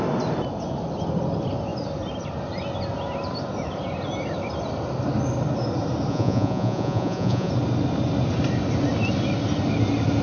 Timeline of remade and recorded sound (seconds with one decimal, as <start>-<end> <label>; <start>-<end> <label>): 0.0-6.1 recorded; 6.1-7.5 remade; 7.5-10.2 recorded